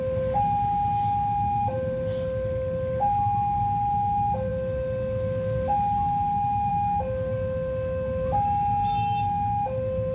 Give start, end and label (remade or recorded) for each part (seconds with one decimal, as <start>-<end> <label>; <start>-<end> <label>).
0.0-10.1 recorded